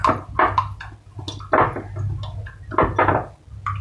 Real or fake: real